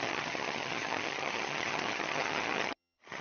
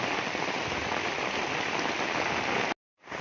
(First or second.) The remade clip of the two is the first